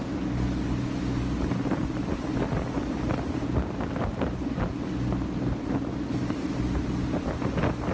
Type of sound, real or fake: real